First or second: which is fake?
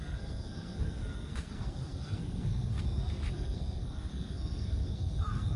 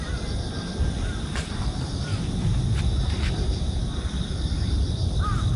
first